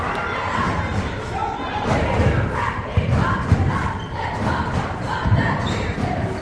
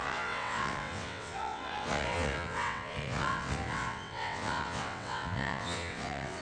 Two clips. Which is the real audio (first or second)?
first